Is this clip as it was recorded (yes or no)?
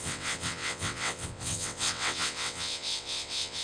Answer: no